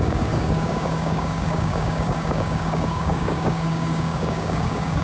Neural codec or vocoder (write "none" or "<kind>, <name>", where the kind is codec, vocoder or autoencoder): codec, DAC